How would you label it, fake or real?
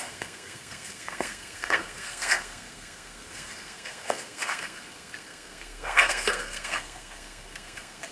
fake